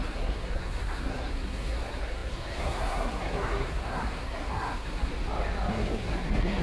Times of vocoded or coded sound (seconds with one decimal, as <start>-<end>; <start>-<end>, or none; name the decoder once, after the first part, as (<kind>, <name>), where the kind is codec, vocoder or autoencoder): 0.0-5.1 (codec, SNAC); 5.7-6.6